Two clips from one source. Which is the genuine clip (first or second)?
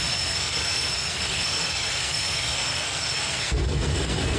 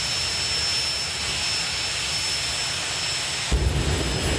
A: second